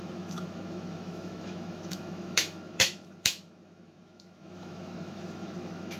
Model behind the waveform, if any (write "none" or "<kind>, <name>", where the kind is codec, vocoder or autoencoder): autoencoder, DAC-VAE